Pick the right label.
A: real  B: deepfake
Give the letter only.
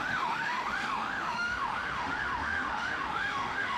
B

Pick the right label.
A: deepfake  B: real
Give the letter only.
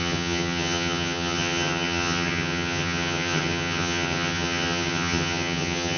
A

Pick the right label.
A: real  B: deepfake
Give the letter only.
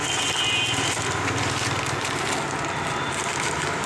A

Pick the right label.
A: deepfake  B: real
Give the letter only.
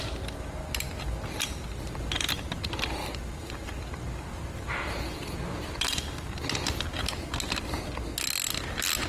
B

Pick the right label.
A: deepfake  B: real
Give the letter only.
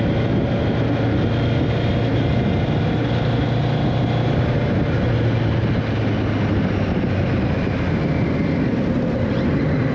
B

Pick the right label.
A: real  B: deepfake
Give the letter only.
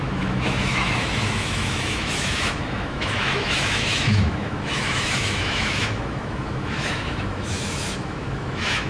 B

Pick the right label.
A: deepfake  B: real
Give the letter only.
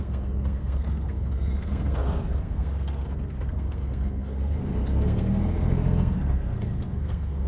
A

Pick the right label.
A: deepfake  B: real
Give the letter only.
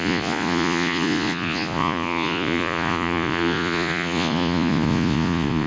A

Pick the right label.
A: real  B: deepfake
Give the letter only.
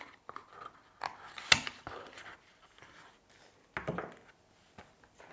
A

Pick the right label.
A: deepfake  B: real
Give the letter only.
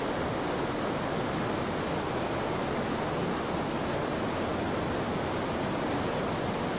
B